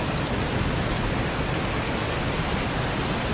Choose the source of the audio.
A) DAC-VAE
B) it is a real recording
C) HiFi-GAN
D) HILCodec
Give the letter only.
B